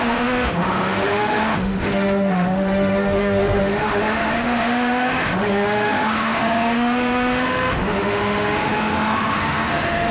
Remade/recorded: remade